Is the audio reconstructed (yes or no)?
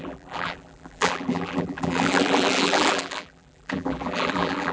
yes